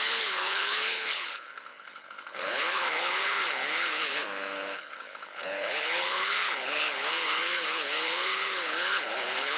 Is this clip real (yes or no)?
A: no